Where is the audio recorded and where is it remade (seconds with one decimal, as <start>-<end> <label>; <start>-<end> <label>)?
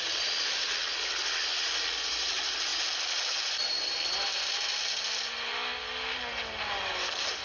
0.0-7.4 recorded